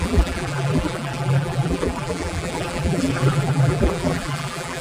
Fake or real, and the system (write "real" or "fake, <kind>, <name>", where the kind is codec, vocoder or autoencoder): fake, vocoder, BigVGAN v2